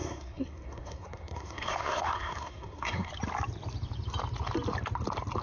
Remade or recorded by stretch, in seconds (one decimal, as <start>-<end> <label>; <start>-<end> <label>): 0.0-3.1 remade; 3.1-5.4 recorded